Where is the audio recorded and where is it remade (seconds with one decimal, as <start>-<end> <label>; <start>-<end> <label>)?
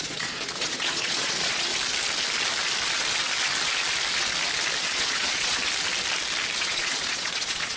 0.0-1.7 remade; 1.7-4.8 recorded; 4.8-5.6 remade; 5.6-6.6 recorded; 6.6-7.8 remade